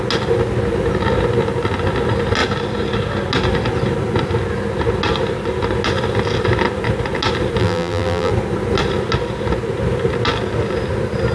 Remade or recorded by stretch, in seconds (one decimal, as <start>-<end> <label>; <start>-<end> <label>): 0.0-7.6 recorded; 7.6-8.3 remade; 8.3-11.3 recorded